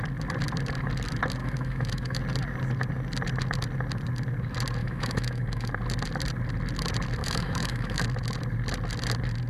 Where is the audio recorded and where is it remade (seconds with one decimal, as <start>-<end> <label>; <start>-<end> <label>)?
0.0-1.4 recorded; 1.4-2.2 remade; 2.2-4.8 recorded; 4.8-5.7 remade; 5.7-7.2 recorded; 7.2-8.0 remade; 8.0-9.5 recorded